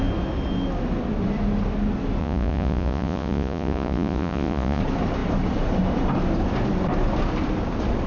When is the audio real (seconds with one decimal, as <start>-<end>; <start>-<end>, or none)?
0.0-2.2; 4.8-8.1

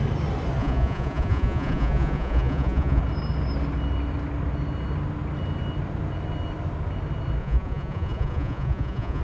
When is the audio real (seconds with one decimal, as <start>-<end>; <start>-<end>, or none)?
0.0-0.6; 3.0-7.4

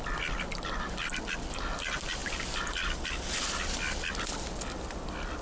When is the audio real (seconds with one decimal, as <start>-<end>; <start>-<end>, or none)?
0.0-5.4

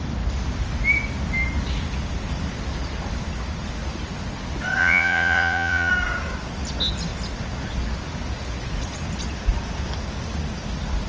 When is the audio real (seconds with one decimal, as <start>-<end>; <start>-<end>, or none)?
0.0-4.8; 5.9-11.1

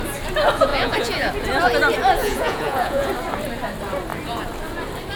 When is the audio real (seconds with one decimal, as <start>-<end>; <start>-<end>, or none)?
0.0-0.7; 1.3-2.2; 3.1-5.2